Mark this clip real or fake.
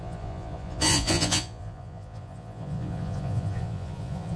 fake